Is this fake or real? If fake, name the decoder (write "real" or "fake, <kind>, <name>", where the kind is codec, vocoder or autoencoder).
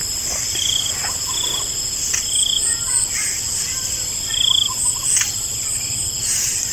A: real